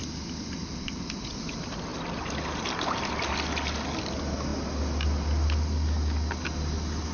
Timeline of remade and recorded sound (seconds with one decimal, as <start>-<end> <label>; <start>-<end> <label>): 0.0-1.9 recorded; 1.9-2.6 remade; 2.6-7.1 recorded